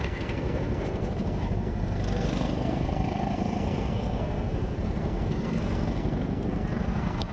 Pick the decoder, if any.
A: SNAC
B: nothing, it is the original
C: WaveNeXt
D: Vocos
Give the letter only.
A